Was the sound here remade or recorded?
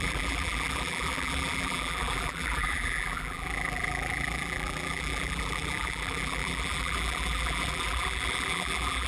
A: remade